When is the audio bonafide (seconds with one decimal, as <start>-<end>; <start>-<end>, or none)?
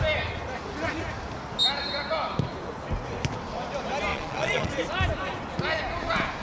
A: 0.0-4.1; 4.7-6.4